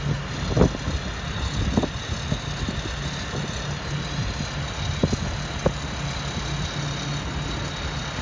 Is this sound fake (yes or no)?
no